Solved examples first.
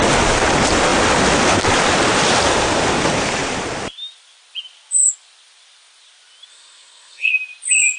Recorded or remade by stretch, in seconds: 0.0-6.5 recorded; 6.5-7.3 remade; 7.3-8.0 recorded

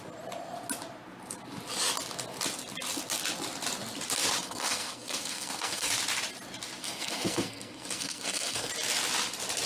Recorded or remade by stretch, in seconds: 0.0-4.4 recorded; 4.4-5.9 remade; 5.9-6.8 recorded; 6.8-8.7 remade; 8.7-9.7 recorded

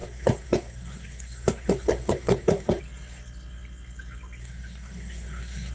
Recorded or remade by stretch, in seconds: 0.0-2.8 remade; 2.8-4.4 recorded; 4.4-5.7 remade